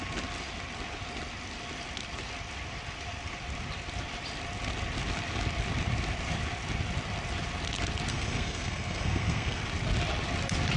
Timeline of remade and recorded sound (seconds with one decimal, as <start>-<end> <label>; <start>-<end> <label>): 0.0-8.1 recorded; 8.1-9.6 remade; 9.6-10.8 recorded